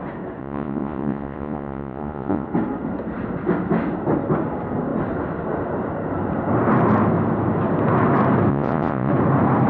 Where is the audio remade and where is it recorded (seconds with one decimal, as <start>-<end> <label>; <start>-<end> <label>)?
0.0-0.4 recorded; 0.4-2.5 remade; 2.5-8.5 recorded; 8.5-9.1 remade; 9.1-9.7 recorded

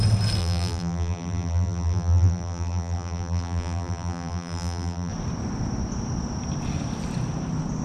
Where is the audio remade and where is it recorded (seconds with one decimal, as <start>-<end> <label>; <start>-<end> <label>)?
0.0-0.4 recorded; 0.4-5.1 remade; 5.1-7.8 recorded

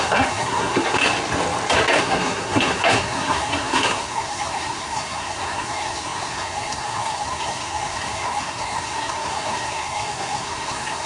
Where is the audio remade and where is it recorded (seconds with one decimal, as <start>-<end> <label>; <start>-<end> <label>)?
0.0-1.0 remade; 1.0-2.0 recorded; 2.0-11.1 remade

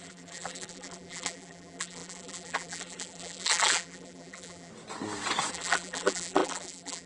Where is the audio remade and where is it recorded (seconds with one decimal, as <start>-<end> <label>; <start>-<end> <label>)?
0.0-4.7 remade; 4.7-5.5 recorded; 5.5-7.1 remade

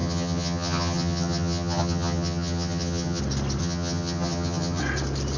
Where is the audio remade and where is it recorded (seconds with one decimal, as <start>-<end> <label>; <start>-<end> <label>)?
0.0-3.2 remade; 3.2-3.6 recorded; 3.6-4.8 remade; 4.8-5.4 recorded

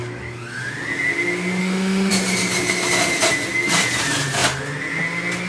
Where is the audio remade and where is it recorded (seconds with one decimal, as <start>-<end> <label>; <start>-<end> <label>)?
0.0-1.6 recorded; 1.6-2.1 remade; 2.1-5.5 recorded